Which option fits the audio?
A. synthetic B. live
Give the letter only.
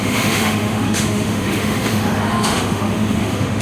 A